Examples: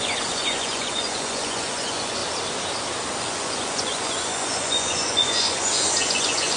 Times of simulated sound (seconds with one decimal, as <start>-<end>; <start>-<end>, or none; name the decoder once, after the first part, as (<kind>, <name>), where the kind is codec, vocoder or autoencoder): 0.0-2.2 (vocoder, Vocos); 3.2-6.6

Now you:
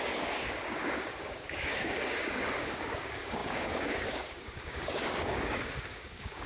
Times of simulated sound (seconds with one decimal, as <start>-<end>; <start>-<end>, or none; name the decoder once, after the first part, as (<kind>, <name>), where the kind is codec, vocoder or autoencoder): 0.0-6.5 (codec, DAC)

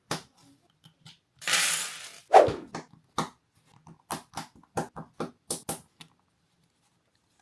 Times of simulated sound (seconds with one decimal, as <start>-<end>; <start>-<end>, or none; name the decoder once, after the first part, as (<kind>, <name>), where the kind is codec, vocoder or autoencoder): none